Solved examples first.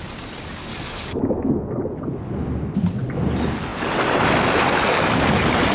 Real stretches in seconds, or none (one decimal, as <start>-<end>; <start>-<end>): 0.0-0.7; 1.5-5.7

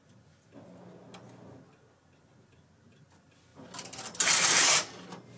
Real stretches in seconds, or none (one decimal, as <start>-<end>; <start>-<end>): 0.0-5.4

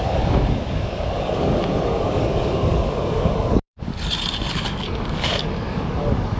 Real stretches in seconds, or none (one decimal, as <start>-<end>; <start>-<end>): 3.9-4.5

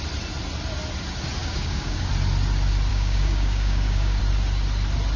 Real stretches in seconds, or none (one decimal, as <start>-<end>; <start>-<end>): 0.0-1.4; 2.1-2.9; 4.2-5.2

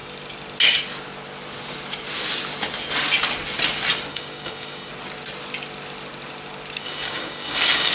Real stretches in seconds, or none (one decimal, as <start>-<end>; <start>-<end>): 0.0-4.1; 4.9-6.8